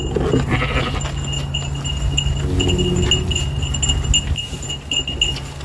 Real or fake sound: real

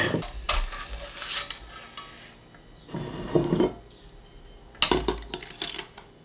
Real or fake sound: real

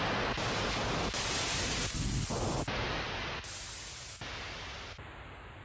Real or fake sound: real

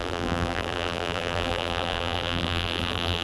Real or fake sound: fake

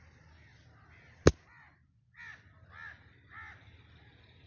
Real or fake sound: real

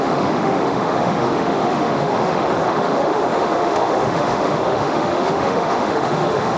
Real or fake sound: fake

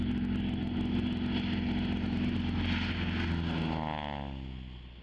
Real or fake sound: real